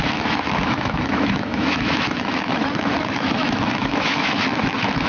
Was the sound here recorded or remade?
remade